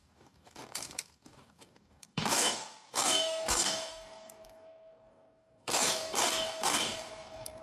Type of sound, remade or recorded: remade